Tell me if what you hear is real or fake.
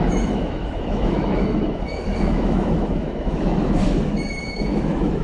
fake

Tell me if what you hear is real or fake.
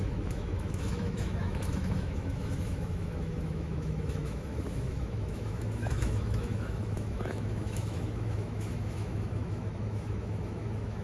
fake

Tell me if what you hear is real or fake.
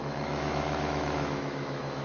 fake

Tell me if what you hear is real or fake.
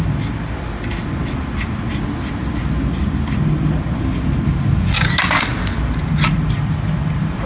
real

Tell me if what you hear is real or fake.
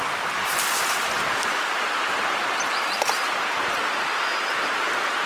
real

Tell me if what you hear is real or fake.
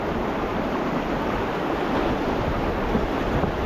real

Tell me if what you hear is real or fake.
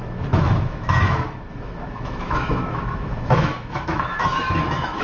fake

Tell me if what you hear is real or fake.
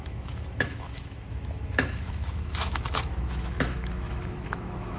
fake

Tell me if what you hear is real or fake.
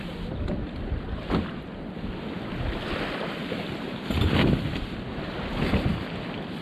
real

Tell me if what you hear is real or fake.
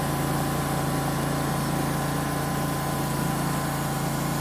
real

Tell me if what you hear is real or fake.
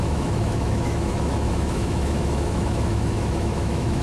fake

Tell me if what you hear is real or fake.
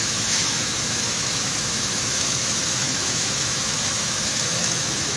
fake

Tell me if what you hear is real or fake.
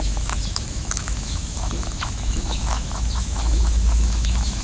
fake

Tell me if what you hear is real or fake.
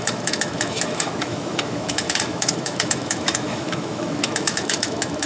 fake